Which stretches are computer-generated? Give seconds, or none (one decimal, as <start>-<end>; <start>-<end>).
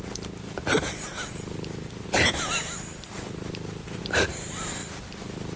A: 0.0-0.6; 4.0-4.8